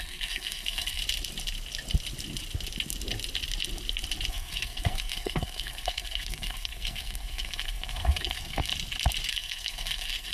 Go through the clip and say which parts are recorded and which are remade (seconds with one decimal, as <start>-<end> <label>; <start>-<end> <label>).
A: 0.0-1.0 remade; 1.0-4.3 recorded; 4.3-8.7 remade; 8.7-9.3 recorded; 9.3-10.3 remade